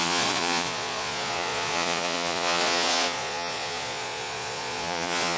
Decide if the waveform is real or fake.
fake